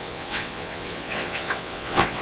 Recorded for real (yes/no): no